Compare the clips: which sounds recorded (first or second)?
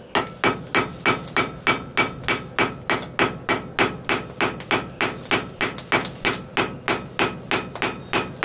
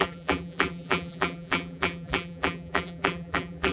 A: first